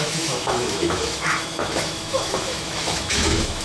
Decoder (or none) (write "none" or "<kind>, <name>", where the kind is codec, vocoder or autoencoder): autoencoder, DAC-VAE